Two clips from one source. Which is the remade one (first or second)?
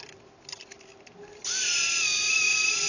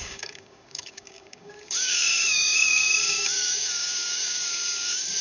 second